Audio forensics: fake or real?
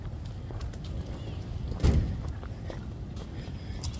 real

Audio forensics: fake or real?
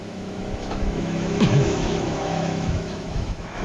fake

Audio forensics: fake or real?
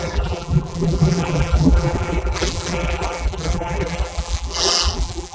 fake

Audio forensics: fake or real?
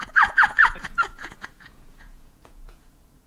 fake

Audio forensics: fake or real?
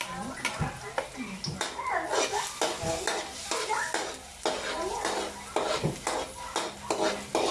real